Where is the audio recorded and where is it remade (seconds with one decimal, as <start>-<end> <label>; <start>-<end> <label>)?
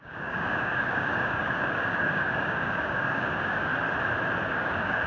0.0-3.7 remade; 3.7-4.5 recorded; 4.5-5.1 remade